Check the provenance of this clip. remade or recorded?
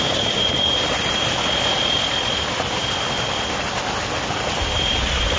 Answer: recorded